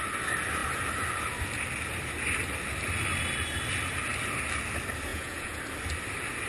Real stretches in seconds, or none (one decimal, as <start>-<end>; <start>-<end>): 0.0-5.1; 5.6-6.5